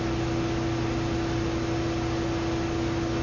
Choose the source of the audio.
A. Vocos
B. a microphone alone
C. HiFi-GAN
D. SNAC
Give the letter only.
B